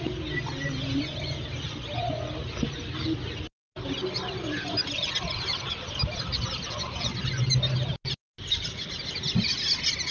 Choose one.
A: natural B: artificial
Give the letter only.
A